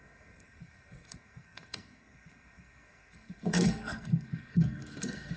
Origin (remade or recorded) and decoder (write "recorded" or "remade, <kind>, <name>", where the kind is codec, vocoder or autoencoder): remade, codec, SNAC